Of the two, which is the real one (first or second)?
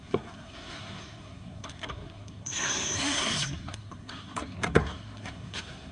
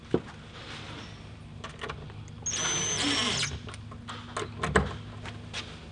second